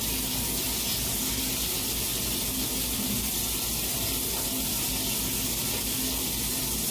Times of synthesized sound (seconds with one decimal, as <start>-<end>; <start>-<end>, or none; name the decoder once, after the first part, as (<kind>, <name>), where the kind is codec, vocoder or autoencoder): none